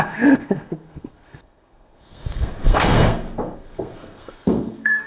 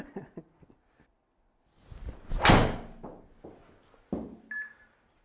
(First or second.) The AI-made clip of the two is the first